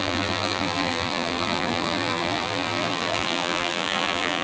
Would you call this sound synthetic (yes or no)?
yes